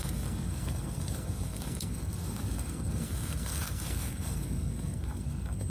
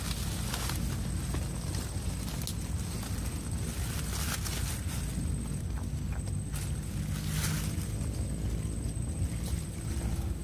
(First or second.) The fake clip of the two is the first